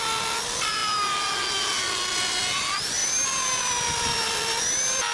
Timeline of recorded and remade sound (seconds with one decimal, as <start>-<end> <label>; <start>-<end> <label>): 0.0-5.1 recorded

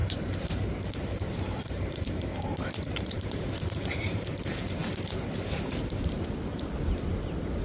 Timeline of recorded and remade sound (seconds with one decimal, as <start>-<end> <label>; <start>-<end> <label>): 0.0-3.4 remade; 3.4-7.6 recorded

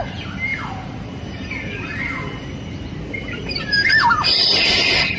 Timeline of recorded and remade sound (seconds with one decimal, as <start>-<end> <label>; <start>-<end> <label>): 0.0-5.2 recorded

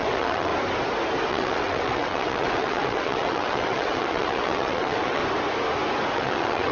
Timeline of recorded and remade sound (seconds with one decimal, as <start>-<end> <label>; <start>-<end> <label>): 0.0-0.5 remade; 0.5-1.3 recorded; 1.3-5.2 remade; 5.2-6.1 recorded; 6.1-6.7 remade

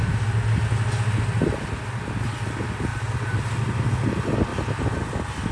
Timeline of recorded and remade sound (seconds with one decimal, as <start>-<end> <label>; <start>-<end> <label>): 0.0-2.9 recorded; 2.9-3.6 remade; 3.6-4.5 recorded; 4.5-5.5 remade

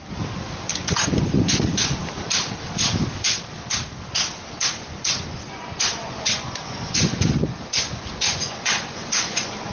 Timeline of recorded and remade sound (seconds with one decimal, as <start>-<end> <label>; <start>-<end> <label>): 0.0-0.7 recorded; 0.7-2.0 remade; 2.0-4.8 recorded; 4.8-9.7 remade

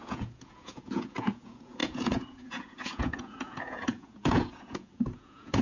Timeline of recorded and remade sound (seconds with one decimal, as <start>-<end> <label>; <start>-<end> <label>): 0.0-5.6 remade

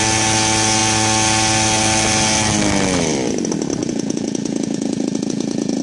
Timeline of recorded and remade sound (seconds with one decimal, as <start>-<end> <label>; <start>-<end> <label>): 0.0-3.8 recorded; 3.8-5.8 remade